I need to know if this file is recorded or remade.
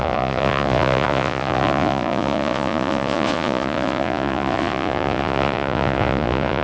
remade